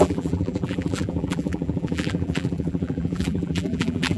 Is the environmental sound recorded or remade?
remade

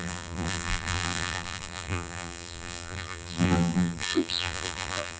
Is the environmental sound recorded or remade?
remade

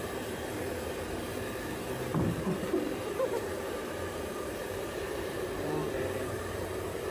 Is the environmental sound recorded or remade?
remade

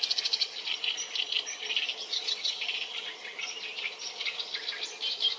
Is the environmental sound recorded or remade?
remade